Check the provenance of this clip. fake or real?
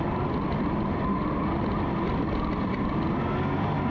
real